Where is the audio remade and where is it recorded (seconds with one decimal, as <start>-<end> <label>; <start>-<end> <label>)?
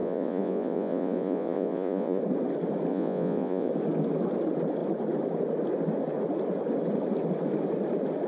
0.0-2.2 remade; 2.2-2.9 recorded; 2.9-3.7 remade; 3.7-8.3 recorded